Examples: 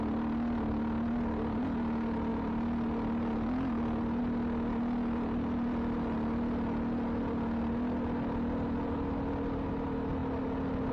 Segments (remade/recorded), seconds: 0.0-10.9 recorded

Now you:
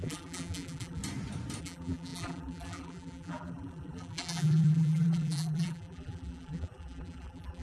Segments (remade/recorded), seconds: 0.0-1.0 remade; 1.0-1.6 recorded; 1.6-7.6 remade

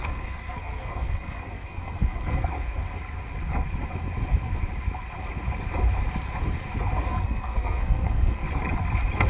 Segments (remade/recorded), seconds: 0.0-2.5 remade; 2.5-7.1 recorded; 7.1-8.4 remade; 8.4-9.3 recorded

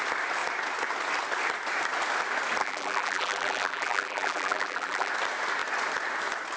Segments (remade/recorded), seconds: 0.0-2.6 recorded; 2.6-5.1 remade; 5.1-6.6 recorded